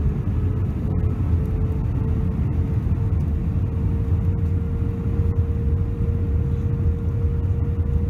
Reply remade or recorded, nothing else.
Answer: recorded